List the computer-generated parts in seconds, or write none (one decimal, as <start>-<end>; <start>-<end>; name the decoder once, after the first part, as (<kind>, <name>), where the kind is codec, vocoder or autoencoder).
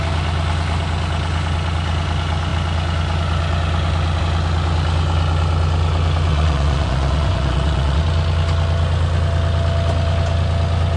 6.3-8.0 (vocoder, Vocos)